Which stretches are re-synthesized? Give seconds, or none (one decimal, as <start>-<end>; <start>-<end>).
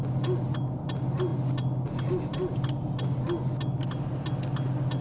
none